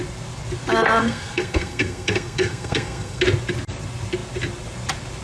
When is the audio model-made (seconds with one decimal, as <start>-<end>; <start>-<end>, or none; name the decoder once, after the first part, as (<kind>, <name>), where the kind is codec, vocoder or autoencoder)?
1.0-3.2 (codec, SNAC)